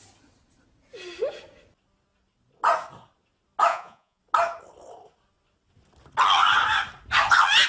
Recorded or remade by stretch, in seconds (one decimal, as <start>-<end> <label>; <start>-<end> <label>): 0.0-3.7 recorded; 3.7-4.2 remade; 4.2-7.7 recorded